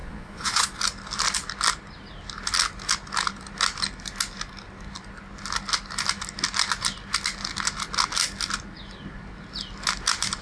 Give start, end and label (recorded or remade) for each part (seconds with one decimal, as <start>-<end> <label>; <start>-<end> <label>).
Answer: 0.0-0.8 remade; 0.8-10.4 recorded